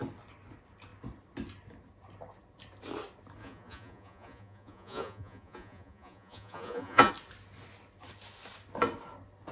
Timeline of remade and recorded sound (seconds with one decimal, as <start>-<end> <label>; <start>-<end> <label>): 0.0-3.4 recorded; 3.4-7.1 remade; 7.1-9.5 recorded